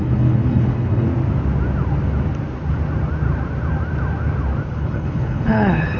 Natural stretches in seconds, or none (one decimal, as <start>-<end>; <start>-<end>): 1.1-4.7